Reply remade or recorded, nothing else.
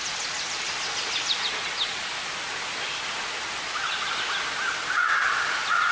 remade